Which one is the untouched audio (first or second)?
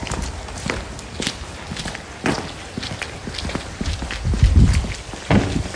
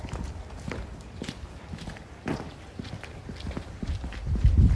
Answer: first